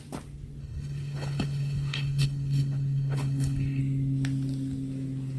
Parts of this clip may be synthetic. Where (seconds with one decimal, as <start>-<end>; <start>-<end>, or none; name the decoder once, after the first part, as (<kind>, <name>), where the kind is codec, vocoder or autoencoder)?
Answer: 0.6-3.8 (codec, HILCodec)